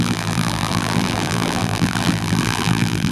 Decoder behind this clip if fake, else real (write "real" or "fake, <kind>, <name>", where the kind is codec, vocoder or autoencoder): fake, vocoder, BigVGAN v2